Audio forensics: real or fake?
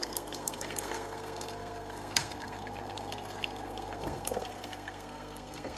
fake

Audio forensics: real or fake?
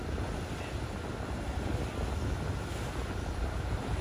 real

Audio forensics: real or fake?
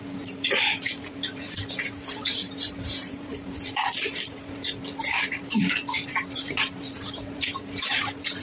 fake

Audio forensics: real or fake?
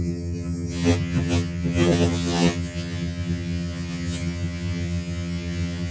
fake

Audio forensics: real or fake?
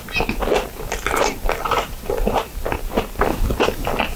real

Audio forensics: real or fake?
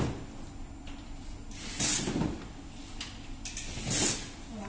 real